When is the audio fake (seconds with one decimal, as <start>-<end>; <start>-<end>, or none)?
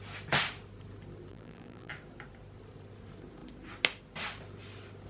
1.3-1.9